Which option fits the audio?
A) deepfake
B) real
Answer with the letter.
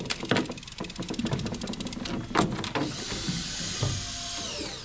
B